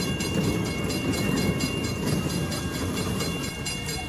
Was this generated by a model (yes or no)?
yes